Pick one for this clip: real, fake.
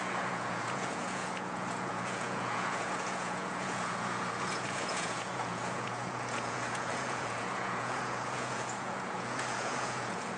fake